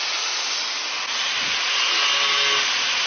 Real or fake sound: real